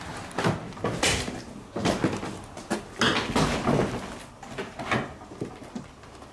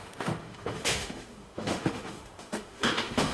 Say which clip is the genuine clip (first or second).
first